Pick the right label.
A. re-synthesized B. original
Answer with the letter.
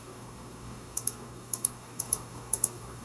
A